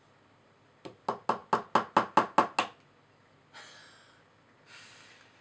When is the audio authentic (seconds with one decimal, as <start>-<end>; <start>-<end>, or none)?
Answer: 0.0-5.4